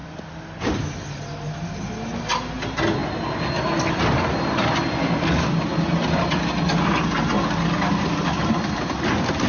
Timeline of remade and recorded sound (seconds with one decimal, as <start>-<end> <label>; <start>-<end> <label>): 0.0-9.5 recorded